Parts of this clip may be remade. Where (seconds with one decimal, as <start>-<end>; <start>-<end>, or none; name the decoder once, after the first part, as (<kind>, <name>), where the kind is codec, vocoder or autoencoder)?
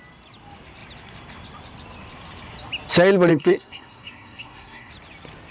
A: 3.3-4.9 (codec, SNAC)